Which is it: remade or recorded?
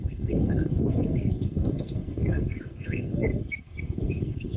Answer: remade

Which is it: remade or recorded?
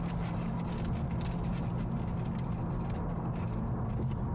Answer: recorded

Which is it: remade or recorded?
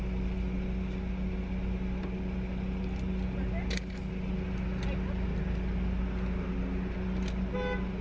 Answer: recorded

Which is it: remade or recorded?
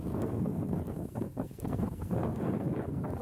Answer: remade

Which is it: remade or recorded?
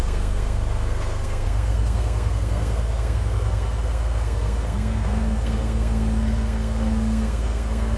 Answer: remade